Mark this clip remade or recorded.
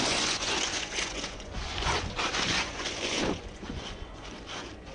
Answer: remade